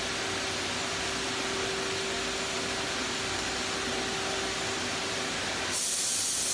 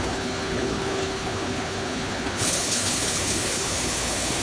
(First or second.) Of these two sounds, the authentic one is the first